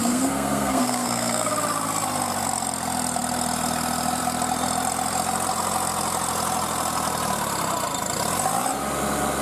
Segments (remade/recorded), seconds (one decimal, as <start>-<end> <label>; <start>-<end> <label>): 0.0-1.5 remade; 1.5-9.4 recorded